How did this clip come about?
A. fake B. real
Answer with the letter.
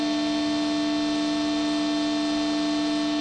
B